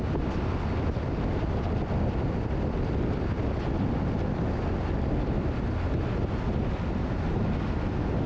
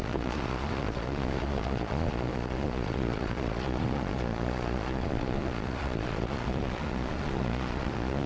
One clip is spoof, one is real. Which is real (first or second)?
first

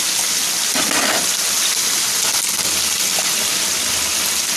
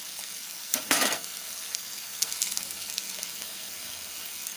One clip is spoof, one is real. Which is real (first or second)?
first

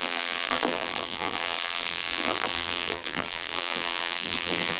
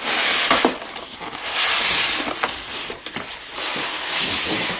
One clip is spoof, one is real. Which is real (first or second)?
second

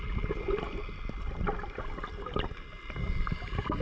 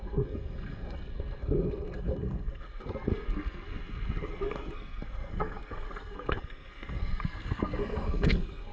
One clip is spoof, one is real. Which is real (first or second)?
first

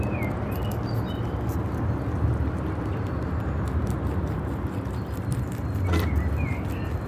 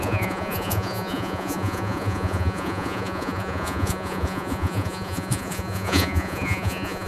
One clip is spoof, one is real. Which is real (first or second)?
first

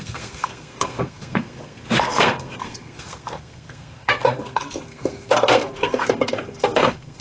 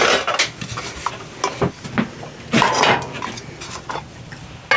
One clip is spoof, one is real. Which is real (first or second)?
second